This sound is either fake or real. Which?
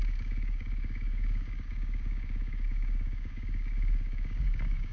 fake